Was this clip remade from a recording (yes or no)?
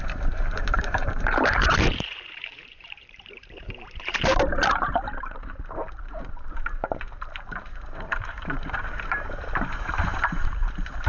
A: yes